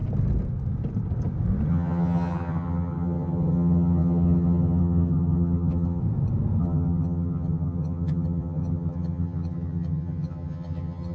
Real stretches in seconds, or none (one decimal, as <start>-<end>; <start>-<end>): 0.0-1.7; 6.0-6.6